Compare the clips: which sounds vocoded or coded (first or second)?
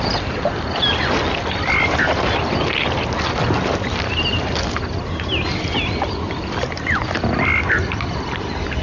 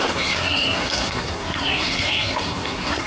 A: second